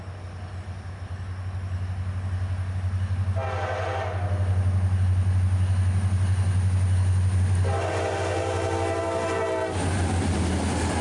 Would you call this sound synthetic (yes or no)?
no